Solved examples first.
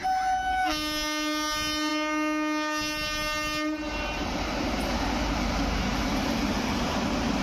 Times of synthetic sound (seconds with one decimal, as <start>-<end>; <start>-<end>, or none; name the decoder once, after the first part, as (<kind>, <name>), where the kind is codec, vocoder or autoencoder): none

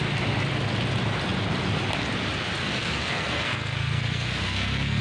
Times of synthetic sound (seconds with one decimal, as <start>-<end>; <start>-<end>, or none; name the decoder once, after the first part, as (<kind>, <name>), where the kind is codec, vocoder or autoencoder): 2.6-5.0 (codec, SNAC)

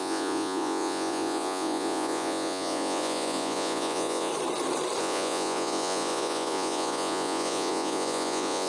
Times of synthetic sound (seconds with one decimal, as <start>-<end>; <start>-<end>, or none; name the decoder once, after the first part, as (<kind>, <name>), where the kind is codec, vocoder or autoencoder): 0.0-4.3 (vocoder, Vocos); 5.0-8.7